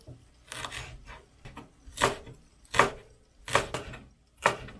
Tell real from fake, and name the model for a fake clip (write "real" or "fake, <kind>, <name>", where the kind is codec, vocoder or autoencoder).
real